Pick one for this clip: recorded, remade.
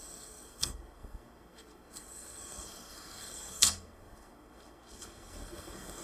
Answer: remade